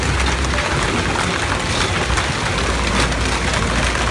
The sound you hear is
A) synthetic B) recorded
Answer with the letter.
B